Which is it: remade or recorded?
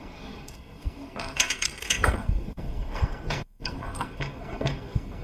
remade